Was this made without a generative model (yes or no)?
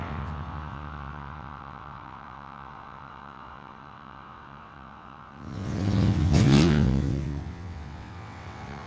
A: no